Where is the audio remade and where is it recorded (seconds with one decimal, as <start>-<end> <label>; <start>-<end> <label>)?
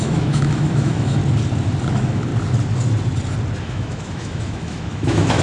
0.0-1.2 remade; 1.2-1.9 recorded; 1.9-2.3 remade; 2.3-3.6 recorded; 3.6-5.4 remade